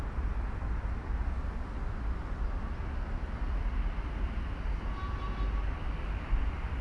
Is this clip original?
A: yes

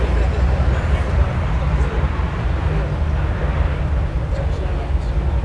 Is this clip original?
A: yes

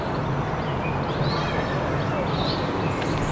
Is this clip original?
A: yes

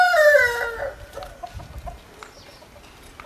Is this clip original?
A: yes